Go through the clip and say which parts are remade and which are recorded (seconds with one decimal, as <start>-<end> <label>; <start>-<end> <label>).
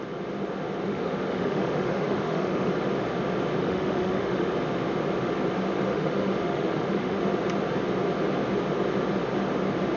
0.0-0.9 recorded; 0.9-2.7 remade; 2.7-3.6 recorded; 3.6-4.5 remade; 4.5-5.9 recorded; 5.9-7.2 remade; 7.2-10.0 recorded